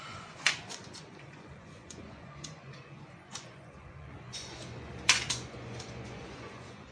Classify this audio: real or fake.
fake